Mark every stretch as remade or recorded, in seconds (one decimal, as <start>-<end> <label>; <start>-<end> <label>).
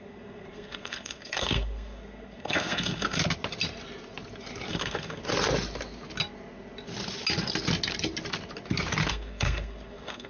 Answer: 0.0-3.2 remade; 3.2-4.7 recorded; 4.7-5.2 remade; 5.2-9.1 recorded; 9.1-10.3 remade